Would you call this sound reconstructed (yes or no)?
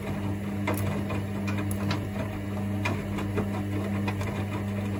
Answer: no